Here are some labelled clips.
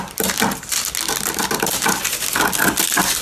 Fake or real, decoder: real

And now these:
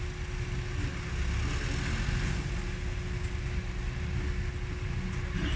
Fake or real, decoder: real